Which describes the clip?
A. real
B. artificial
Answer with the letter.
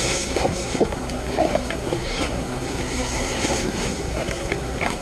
B